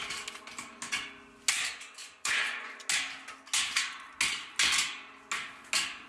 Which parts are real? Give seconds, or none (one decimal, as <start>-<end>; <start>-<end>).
0.0-2.0; 2.7-6.1